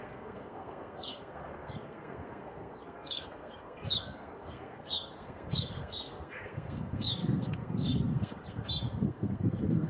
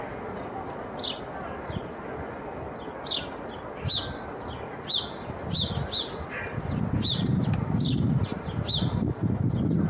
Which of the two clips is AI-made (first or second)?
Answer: first